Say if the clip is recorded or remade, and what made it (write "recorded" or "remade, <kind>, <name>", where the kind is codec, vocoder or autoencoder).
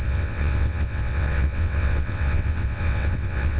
remade, vocoder, WaveNeXt